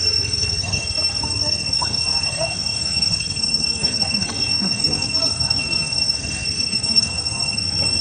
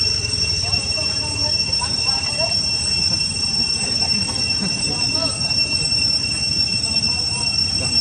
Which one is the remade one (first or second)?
first